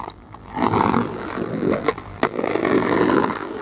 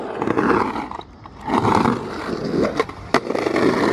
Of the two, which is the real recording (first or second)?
second